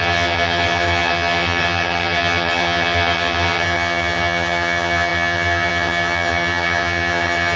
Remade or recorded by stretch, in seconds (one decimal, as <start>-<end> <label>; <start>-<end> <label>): 0.0-7.6 remade